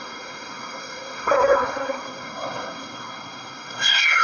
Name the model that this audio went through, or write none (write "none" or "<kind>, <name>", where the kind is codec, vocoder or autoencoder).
codec, SNAC